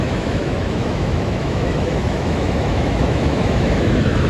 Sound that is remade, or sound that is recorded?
remade